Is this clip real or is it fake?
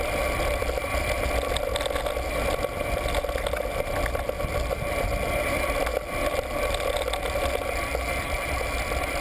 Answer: real